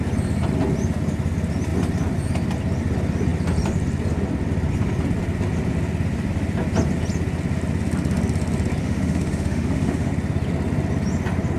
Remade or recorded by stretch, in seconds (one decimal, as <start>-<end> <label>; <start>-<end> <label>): 0.0-8.8 recorded; 8.8-10.1 remade; 10.1-11.6 recorded